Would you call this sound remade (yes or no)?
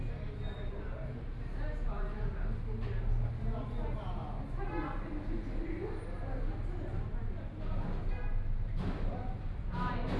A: no